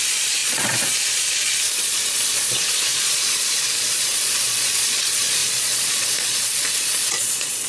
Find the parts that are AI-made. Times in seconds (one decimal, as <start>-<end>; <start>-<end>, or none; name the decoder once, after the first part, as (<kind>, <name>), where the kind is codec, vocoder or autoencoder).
0.0-7.7 (vocoder, Vocos)